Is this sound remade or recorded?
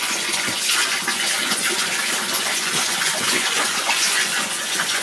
remade